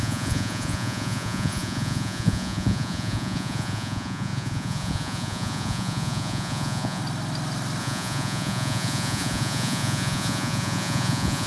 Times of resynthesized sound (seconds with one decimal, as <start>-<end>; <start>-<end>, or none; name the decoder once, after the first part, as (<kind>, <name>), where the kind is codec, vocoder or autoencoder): 0.0-7.0 (vocoder, Vocos); 7.8-11.5